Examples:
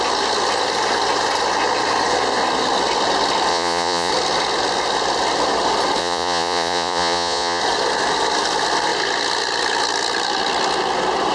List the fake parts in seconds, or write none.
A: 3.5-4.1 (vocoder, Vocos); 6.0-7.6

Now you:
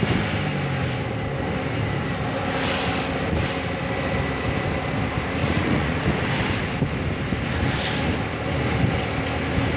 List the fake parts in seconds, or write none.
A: 5.4-6.0 (vocoder, Vocos)

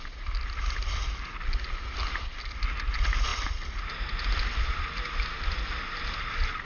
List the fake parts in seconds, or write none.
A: none

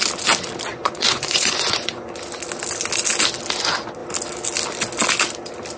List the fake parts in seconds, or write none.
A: 0.7-2.1 (vocoder, Vocos)

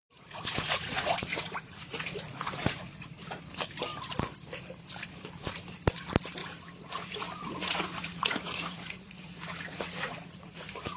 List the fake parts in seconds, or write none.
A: 0.0-3.4 (vocoder, Vocos); 6.4-11.0

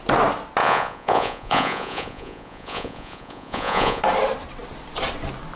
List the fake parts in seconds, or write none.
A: 0.6-4.0 (vocoder, Vocos)

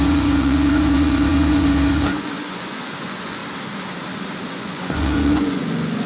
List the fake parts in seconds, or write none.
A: 0.0-3.4 (vocoder, Vocos); 4.5-6.1

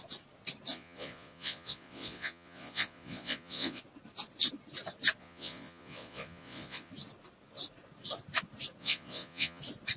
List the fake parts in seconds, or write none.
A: 0.7-3.8 (vocoder, Vocos); 5.2-6.9; 8.8-9.6